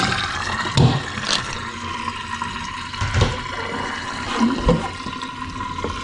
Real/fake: real